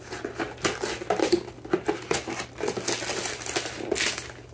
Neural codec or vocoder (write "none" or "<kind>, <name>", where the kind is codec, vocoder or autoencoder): none